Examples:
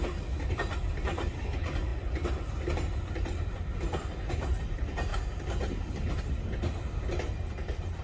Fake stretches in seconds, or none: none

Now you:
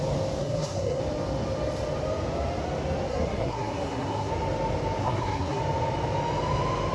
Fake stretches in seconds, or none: 0.4-1.0 (codec, SNAC); 3.1-4.3; 5.0-5.6